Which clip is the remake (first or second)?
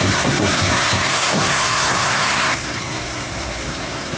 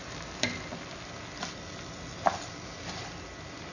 first